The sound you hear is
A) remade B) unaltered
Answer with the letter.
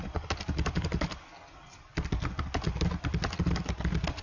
B